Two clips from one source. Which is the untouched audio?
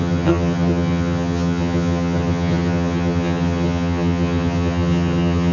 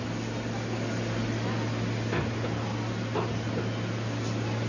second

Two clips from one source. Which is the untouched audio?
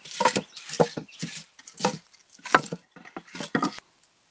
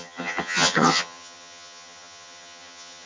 first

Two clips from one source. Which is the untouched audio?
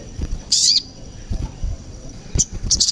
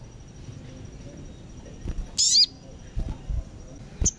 second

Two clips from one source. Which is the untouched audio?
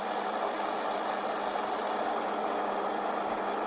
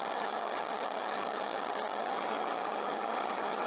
first